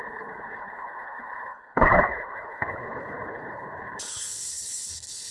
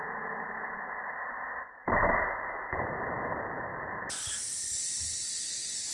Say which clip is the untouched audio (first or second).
second